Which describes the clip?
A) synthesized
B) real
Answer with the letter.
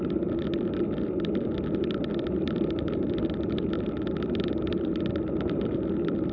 B